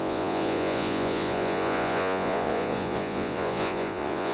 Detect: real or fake fake